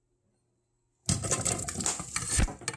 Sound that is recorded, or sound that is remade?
recorded